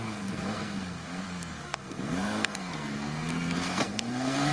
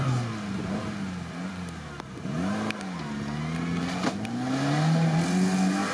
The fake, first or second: first